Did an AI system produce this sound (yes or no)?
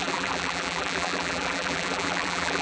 yes